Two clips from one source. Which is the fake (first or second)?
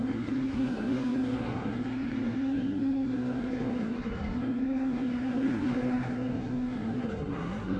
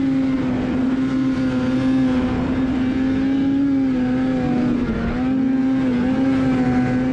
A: first